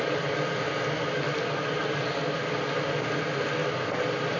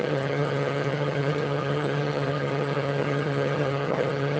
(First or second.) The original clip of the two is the first